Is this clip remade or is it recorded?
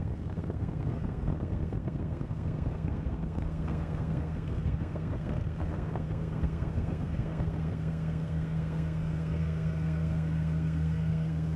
remade